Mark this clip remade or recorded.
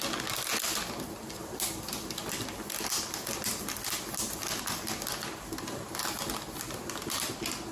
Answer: recorded